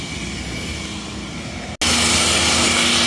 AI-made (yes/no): no